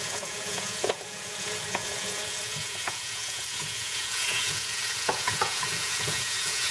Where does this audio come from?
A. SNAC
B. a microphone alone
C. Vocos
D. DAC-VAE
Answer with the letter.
C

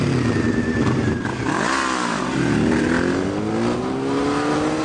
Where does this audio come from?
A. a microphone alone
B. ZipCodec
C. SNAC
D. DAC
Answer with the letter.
A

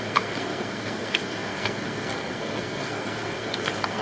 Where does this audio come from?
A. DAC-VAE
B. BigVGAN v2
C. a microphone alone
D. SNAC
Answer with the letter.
D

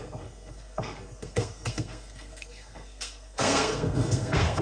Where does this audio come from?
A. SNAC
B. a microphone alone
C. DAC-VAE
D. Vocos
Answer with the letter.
A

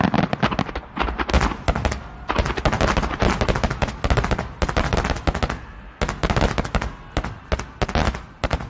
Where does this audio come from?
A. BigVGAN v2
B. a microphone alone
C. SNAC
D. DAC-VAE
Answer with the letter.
B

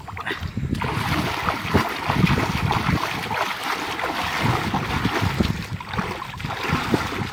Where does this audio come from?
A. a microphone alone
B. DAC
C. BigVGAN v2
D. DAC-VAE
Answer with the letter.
A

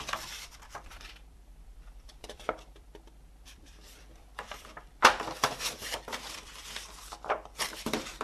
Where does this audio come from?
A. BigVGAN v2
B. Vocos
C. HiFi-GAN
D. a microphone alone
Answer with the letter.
A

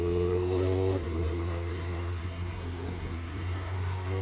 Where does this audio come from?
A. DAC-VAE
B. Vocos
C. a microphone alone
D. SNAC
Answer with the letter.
D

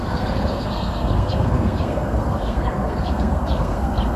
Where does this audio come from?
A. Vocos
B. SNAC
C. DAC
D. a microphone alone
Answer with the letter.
B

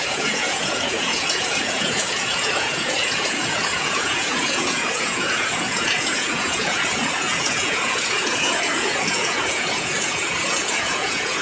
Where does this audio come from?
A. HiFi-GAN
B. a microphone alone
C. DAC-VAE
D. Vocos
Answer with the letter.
D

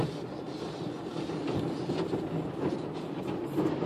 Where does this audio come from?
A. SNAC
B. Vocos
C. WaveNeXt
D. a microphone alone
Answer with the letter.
D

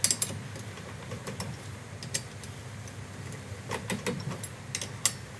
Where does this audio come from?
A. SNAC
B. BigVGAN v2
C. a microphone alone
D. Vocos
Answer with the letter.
C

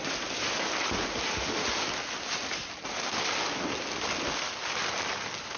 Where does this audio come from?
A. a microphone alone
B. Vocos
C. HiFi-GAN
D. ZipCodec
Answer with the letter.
A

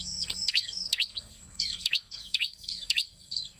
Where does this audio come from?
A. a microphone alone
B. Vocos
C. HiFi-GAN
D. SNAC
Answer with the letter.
D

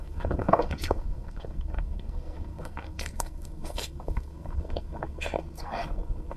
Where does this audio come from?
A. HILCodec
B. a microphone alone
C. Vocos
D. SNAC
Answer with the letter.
D